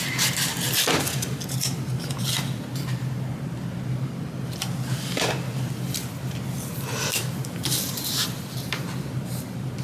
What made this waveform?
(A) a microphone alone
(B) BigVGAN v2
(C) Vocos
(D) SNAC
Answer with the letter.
A